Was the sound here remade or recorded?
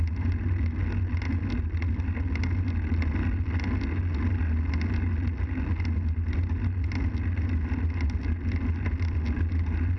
recorded